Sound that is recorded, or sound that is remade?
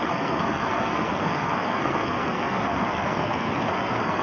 remade